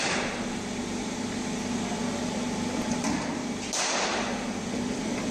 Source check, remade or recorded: recorded